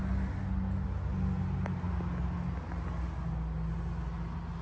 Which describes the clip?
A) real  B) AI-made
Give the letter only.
A